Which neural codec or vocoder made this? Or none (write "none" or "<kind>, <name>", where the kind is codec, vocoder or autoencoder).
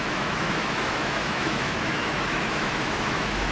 autoencoder, DAC-VAE